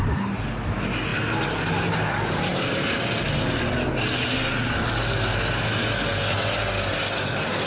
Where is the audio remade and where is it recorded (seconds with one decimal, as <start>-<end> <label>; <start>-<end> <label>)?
0.0-7.7 recorded